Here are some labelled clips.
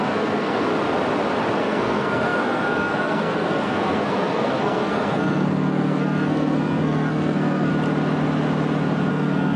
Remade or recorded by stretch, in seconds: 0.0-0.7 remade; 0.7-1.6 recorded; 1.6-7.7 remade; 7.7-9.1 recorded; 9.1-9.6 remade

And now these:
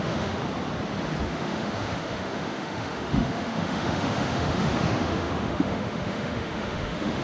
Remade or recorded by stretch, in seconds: 0.0-0.4 remade; 0.4-1.2 recorded; 1.2-7.2 remade